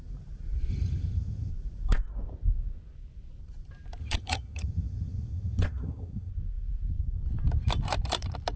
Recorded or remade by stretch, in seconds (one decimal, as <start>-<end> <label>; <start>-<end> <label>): 0.0-0.7 recorded; 0.7-1.5 remade; 1.5-4.0 recorded; 4.0-6.3 remade; 6.3-8.6 recorded